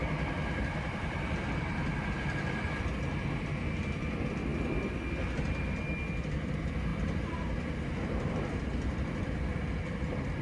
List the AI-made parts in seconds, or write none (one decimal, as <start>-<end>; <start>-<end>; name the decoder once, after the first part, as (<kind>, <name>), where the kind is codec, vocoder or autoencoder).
none